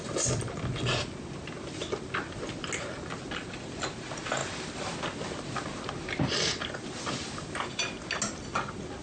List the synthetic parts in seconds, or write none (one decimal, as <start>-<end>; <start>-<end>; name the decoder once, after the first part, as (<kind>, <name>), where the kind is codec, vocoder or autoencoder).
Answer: none